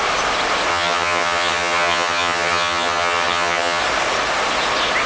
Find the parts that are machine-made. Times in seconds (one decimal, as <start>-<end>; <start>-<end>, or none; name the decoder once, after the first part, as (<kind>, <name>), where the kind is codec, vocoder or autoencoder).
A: 0.7-3.8 (vocoder, HiFi-GAN)